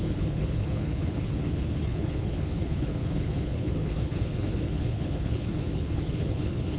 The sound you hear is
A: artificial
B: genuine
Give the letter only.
A